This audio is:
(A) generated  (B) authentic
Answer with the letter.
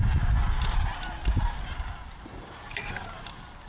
B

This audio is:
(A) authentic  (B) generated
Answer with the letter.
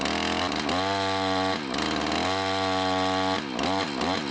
A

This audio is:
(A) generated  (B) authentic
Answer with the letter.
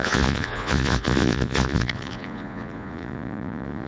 A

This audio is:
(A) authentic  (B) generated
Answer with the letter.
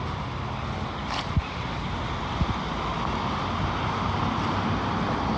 A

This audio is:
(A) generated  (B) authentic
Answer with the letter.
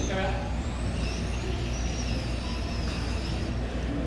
B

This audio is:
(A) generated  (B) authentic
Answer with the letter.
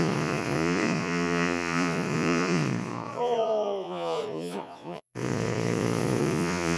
A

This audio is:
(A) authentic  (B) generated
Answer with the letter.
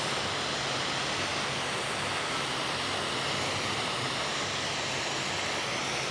A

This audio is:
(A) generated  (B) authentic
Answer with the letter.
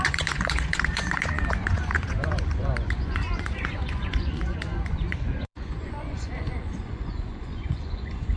A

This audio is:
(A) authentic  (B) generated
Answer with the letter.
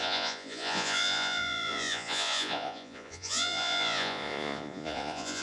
B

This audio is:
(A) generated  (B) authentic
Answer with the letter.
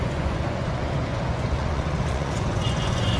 A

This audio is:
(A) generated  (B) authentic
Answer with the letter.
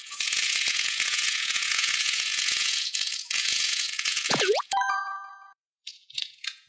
A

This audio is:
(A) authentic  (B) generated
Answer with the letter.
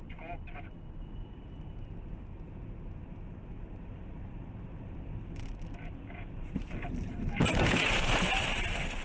A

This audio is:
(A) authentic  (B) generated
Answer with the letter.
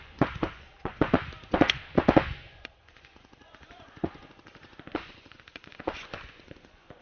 B